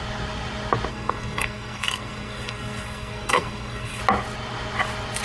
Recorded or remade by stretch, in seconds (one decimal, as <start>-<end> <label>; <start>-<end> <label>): 0.0-0.9 recorded; 0.9-4.0 remade; 4.0-5.2 recorded